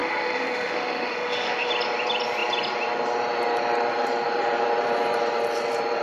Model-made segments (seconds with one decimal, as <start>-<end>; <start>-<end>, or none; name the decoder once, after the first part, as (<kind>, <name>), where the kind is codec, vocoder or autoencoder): 0.0-1.7 (autoencoder, DAC-VAE)